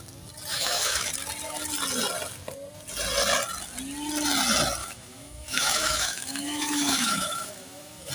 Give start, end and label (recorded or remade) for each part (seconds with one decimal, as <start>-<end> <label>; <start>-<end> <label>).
0.0-0.5 recorded; 0.5-1.1 remade; 1.1-4.8 recorded; 4.8-8.1 remade